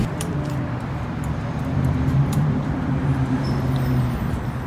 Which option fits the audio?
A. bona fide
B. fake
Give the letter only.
B